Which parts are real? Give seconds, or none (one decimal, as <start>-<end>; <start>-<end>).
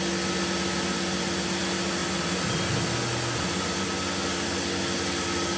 0.0-5.6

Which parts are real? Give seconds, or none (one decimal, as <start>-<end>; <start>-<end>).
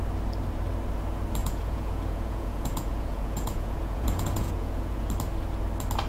0.0-1.4; 5.1-6.1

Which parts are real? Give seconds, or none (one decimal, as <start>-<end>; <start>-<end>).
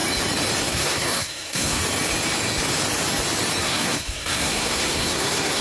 0.0-0.6; 1.8-3.6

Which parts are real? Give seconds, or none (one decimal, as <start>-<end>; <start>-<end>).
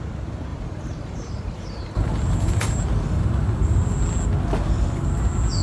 0.0-0.5; 3.7-5.6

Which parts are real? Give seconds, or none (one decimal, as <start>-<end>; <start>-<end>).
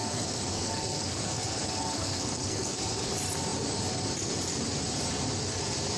3.1-6.0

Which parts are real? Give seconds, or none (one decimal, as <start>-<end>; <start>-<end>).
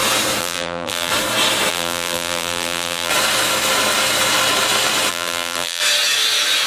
0.0-0.4; 1.1-1.7; 3.1-5.1; 5.8-6.7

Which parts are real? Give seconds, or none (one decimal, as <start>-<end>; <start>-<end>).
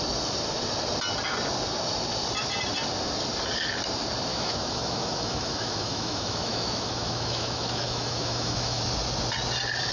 0.0-4.3; 8.8-9.9